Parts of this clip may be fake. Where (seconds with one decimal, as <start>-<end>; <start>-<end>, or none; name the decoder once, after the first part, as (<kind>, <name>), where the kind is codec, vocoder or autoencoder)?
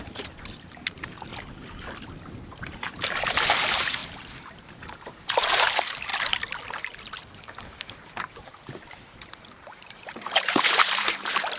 0.0-1.3 (vocoder, BigVGAN v2); 2.6-4.0; 4.5-6.1; 7.2-11.6